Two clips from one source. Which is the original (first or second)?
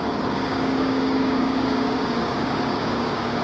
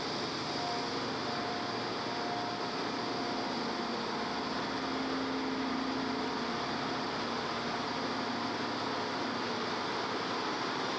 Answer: second